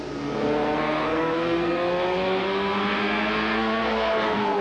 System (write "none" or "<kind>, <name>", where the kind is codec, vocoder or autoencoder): codec, SNAC